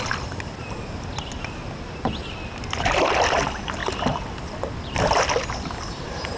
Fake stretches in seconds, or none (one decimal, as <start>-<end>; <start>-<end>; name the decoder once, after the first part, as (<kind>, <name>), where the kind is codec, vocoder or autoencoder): none